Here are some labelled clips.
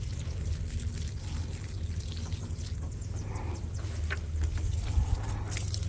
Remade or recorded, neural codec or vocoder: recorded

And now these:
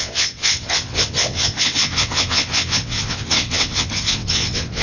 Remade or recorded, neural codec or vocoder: remade, vocoder, WaveNeXt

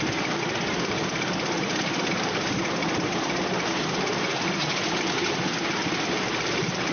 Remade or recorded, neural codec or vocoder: recorded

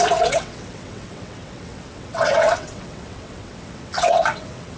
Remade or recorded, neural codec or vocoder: remade, vocoder, WaveNeXt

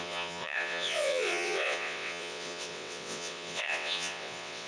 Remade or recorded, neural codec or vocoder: remade, vocoder, WaveNeXt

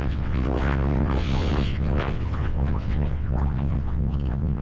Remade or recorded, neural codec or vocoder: remade, vocoder, WaveNeXt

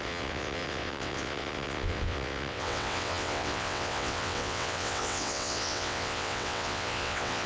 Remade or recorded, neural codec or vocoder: remade, vocoder, WaveNeXt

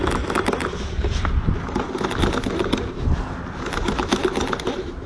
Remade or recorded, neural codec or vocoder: recorded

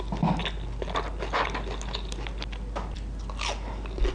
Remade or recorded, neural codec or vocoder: recorded